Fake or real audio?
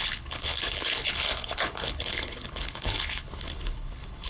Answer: fake